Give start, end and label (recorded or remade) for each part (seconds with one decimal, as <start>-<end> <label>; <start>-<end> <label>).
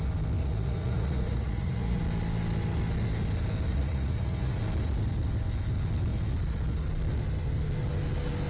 0.0-0.4 recorded; 0.4-2.0 remade; 2.0-3.7 recorded; 3.7-4.6 remade; 4.6-8.5 recorded